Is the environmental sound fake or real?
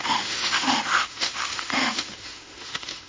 fake